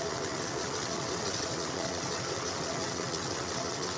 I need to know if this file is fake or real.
fake